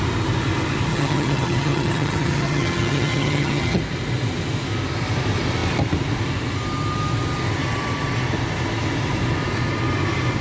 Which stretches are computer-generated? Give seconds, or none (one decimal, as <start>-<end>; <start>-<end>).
0.9-3.8